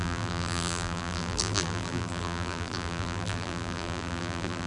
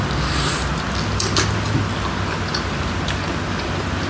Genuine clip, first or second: second